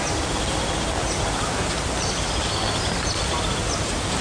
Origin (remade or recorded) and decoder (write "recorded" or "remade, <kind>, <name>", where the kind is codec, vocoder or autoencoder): recorded